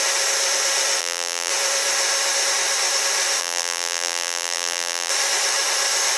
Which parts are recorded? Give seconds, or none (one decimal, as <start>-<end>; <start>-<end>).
0.0-1.0; 1.5-3.4; 5.1-6.2